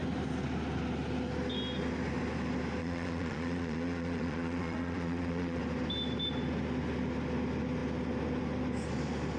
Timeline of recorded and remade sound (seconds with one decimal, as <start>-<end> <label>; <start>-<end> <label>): 0.0-2.8 recorded; 2.8-5.6 remade; 5.6-9.4 recorded